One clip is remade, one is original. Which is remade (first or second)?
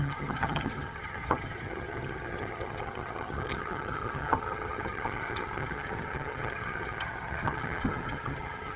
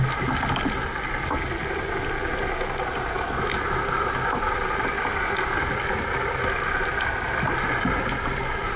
first